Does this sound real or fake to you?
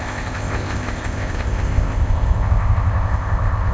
fake